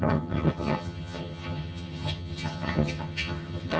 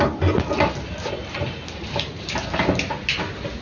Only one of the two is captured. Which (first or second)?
second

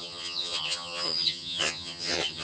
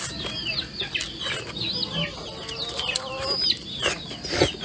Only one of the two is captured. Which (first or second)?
second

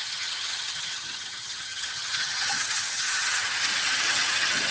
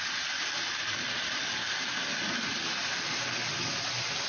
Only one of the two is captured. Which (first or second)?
second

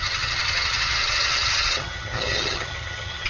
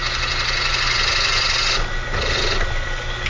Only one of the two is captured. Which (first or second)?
second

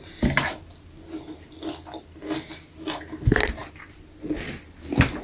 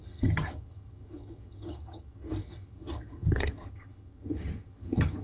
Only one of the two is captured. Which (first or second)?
first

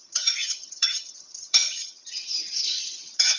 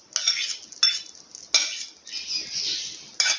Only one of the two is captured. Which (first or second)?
second